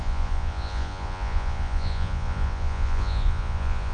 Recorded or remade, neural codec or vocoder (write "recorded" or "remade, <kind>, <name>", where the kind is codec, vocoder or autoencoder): remade, vocoder, Vocos